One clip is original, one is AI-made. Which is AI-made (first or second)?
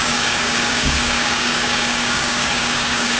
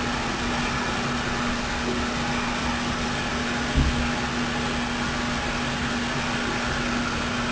first